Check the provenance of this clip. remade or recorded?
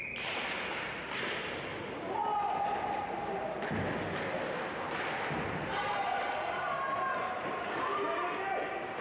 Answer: recorded